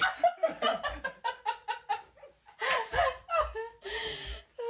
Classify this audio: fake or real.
real